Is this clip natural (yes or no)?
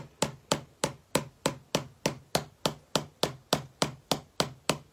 yes